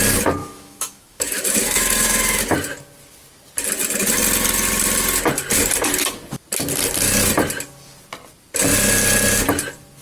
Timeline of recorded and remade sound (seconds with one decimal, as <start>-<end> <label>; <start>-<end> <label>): 0.0-0.4 recorded; 0.4-2.4 remade; 2.4-10.0 recorded